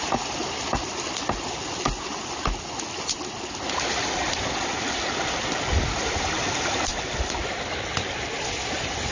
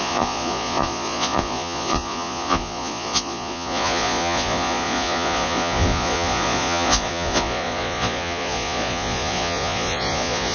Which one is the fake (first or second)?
second